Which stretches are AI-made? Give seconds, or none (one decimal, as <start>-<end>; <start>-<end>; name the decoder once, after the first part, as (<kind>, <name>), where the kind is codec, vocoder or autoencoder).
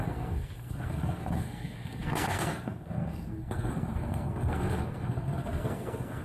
0.0-6.2 (codec, SNAC)